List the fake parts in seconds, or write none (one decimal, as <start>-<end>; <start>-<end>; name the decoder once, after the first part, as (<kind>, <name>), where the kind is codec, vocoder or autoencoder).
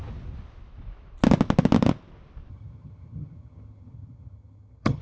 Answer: 2.5-5.0 (vocoder, HiFi-GAN)